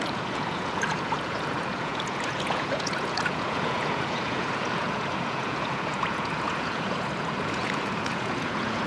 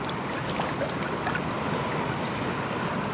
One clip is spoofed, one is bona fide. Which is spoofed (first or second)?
first